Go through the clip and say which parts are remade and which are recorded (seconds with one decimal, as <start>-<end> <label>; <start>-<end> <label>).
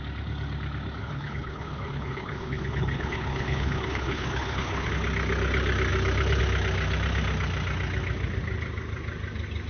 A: 0.0-1.0 recorded; 1.0-4.9 remade; 4.9-9.7 recorded